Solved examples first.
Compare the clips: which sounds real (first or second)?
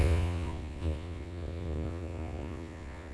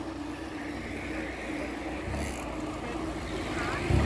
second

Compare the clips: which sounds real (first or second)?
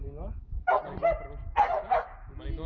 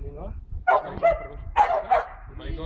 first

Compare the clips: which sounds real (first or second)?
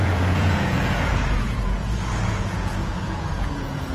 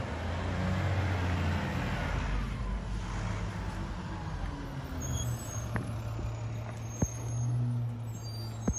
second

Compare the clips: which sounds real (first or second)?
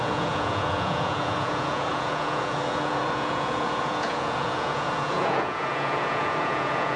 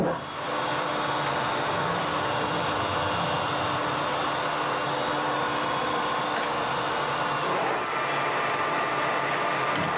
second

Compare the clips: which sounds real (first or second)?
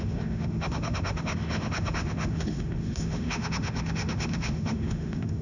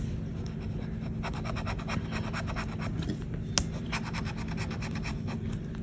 second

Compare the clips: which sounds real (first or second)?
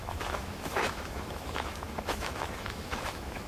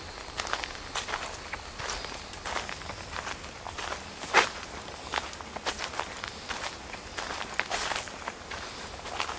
second